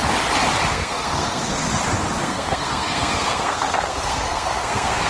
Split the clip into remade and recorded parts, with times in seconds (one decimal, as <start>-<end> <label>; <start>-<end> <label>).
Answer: 0.0-0.7 recorded; 0.7-1.6 remade; 1.6-2.2 recorded; 2.2-5.1 remade